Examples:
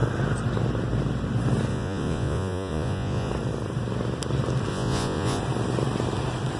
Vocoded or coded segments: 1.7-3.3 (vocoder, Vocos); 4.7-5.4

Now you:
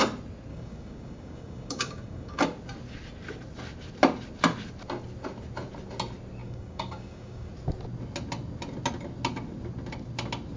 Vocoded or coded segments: 0.5-2.4 (codec, DAC); 6.4-7.5